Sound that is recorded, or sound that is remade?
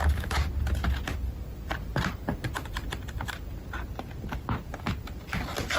recorded